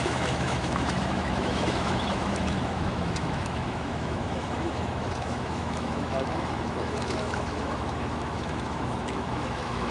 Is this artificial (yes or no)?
yes